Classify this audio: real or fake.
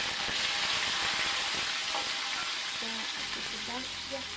real